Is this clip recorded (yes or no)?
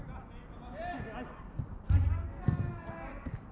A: yes